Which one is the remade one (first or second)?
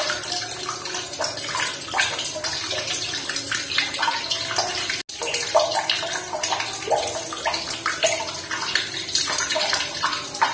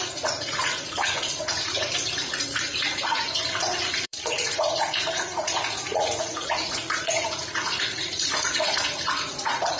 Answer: second